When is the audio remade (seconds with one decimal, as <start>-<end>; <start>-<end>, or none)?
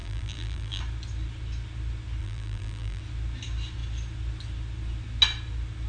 0.0-0.8; 2.2-3.0